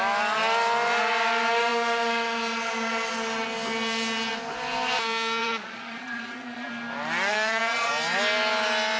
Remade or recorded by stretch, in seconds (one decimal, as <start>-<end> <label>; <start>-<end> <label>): 0.0-5.4 recorded; 5.4-6.7 remade; 6.7-7.3 recorded; 7.3-7.9 remade; 7.9-9.0 recorded